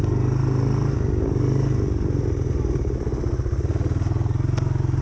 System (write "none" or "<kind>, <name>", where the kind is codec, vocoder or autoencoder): none